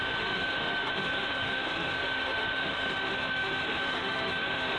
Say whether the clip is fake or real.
fake